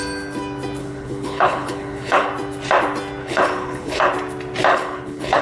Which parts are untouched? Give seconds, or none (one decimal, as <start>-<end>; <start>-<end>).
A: 0.0-0.8; 2.3-3.2; 4.1-4.7